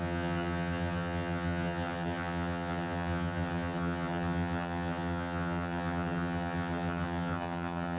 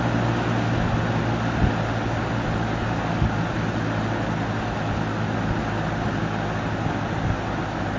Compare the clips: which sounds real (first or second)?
second